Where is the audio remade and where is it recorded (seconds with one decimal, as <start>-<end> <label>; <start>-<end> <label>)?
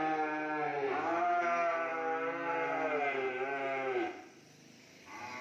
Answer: 0.0-5.4 recorded